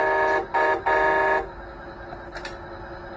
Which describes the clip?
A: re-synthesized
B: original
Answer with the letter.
B